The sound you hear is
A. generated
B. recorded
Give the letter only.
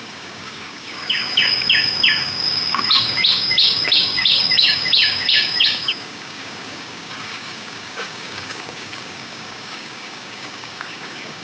A